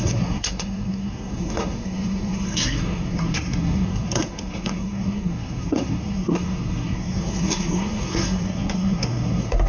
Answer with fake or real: fake